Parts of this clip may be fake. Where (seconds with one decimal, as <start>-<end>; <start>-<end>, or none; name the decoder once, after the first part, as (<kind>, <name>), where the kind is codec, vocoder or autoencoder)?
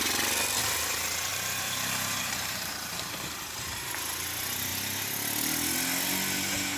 1.3-3.9 (vocoder, BigVGAN v2)